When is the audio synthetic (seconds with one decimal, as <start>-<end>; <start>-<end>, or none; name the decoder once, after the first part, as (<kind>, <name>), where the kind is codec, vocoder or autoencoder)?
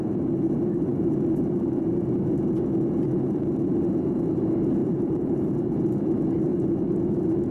4.8-5.5 (vocoder, BigVGAN v2)